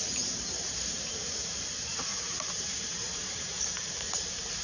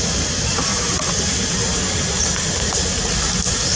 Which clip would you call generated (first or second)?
first